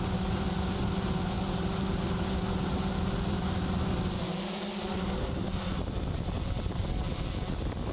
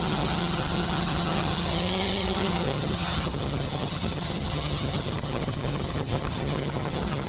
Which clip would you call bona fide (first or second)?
first